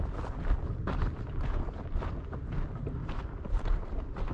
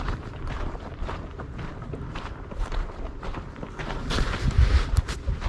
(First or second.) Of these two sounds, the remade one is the second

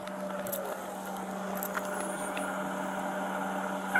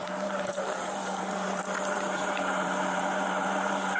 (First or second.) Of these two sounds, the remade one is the second